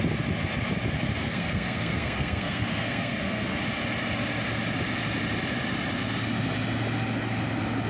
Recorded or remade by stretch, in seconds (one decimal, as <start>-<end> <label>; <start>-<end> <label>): 0.0-1.2 recorded; 1.2-3.6 remade; 3.6-7.9 recorded